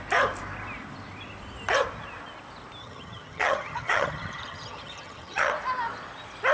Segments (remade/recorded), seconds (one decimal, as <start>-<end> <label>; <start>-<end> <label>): 0.0-2.8 recorded; 2.8-5.5 remade; 5.5-6.5 recorded